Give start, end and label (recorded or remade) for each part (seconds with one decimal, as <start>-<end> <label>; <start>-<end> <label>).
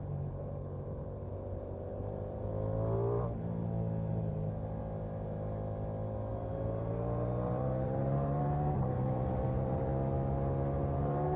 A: 0.0-2.5 remade; 2.5-4.1 recorded; 4.1-4.8 remade; 4.8-6.3 recorded; 6.3-9.9 remade; 9.9-10.8 recorded; 10.8-11.4 remade